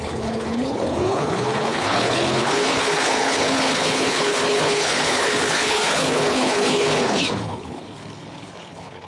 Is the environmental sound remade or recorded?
remade